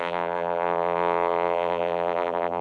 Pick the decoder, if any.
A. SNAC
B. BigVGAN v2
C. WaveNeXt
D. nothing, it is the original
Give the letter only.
B